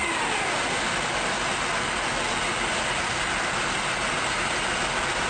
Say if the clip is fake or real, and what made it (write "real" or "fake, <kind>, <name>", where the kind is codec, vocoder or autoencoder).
real